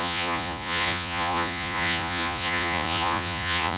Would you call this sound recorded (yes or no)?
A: no